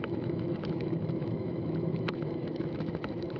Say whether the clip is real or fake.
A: fake